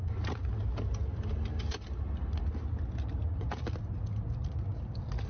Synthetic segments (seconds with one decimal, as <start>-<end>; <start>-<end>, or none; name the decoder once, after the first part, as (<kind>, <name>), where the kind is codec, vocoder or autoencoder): none